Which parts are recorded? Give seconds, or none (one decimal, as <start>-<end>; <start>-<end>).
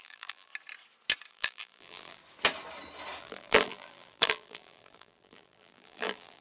0.5-1.3; 2.2-3.2